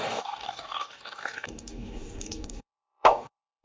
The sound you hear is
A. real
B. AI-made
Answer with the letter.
B